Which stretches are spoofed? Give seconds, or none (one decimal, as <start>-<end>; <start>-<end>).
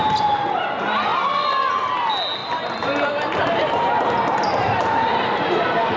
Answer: 2.4-6.0